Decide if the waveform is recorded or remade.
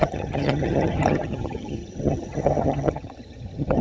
remade